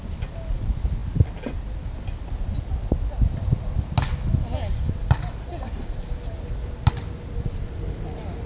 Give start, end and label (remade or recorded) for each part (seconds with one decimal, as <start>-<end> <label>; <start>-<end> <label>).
0.0-8.5 recorded

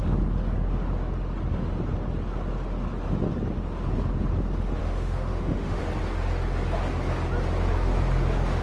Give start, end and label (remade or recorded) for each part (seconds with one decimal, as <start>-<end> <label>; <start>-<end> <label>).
0.0-4.8 recorded; 4.8-5.8 remade; 5.8-8.6 recorded

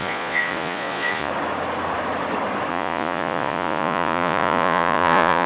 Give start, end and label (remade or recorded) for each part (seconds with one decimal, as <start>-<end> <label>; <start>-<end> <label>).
0.0-1.3 remade; 1.3-2.7 recorded; 2.7-5.5 remade

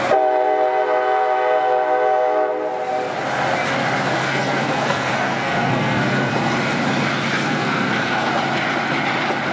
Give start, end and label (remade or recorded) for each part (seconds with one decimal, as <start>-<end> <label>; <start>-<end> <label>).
0.0-4.2 recorded; 4.2-6.3 remade; 6.3-7.3 recorded; 7.3-8.3 remade; 8.3-9.5 recorded

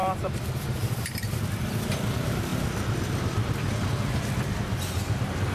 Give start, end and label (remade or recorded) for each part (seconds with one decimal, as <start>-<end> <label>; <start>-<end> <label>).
0.0-1.9 remade; 1.9-2.5 recorded; 2.5-3.5 remade; 3.5-5.5 recorded

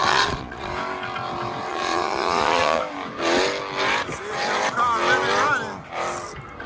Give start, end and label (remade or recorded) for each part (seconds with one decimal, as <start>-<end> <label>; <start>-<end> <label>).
0.0-0.7 remade; 0.7-1.7 recorded; 1.7-2.8 remade; 2.8-6.7 recorded